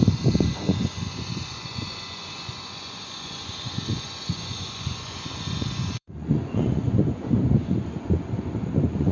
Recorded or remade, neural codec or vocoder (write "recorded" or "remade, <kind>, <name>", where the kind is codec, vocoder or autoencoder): remade, vocoder, Vocos